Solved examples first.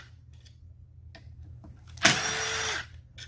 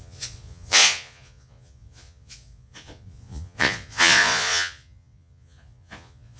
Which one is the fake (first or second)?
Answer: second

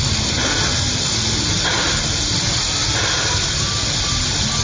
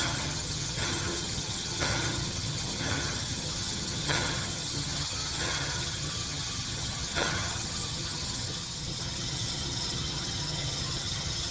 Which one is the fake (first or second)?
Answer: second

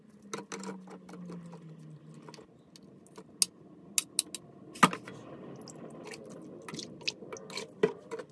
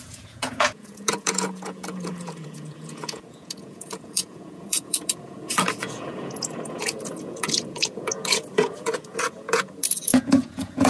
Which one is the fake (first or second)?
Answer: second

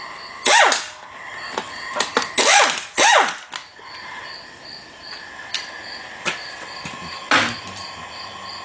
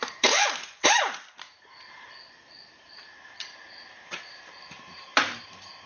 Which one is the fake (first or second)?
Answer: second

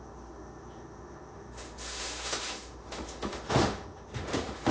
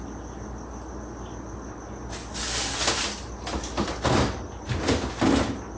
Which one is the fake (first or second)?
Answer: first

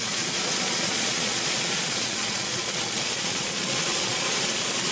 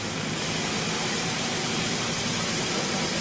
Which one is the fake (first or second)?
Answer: first